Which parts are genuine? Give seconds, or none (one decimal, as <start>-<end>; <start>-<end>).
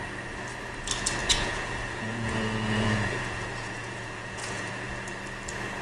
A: 0.0-1.2; 4.7-5.8